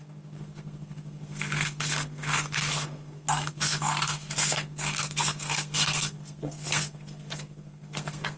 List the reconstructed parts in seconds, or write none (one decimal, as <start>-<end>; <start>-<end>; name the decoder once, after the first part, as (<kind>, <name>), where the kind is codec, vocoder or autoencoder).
0.0-8.4 (codec, SNAC)